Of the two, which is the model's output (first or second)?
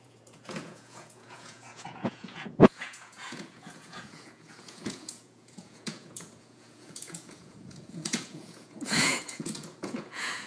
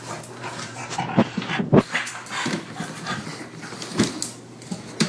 first